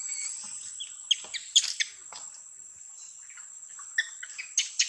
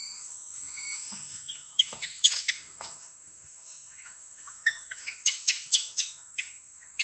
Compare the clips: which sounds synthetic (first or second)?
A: second